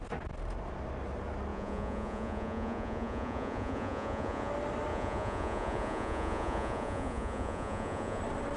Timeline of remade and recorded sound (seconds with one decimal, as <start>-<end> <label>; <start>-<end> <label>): 0.0-1.5 recorded; 1.5-4.5 remade; 4.5-4.9 recorded; 4.9-8.2 remade; 8.2-8.6 recorded